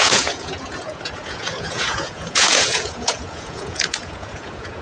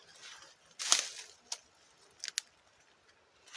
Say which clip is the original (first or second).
second